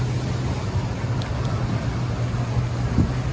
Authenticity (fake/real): real